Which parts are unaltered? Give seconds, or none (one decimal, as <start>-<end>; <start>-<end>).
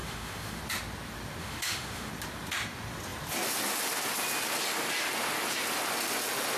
0.6-1.4; 2.1-6.6